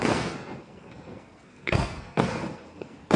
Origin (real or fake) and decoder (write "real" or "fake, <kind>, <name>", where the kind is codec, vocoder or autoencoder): fake, codec, SNAC